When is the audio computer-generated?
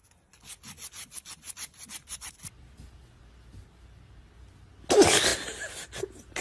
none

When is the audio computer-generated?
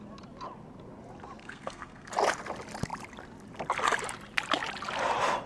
1.4-2.1